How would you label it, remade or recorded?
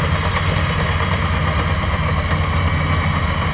recorded